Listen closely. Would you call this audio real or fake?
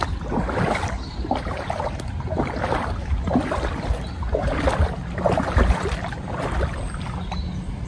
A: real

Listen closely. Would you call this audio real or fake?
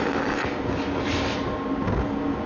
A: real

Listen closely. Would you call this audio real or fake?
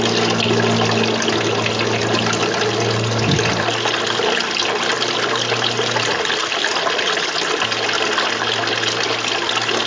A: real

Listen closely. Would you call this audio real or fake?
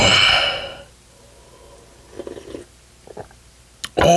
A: real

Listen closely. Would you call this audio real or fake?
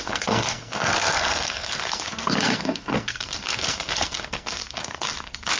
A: fake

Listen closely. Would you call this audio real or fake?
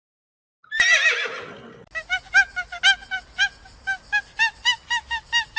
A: real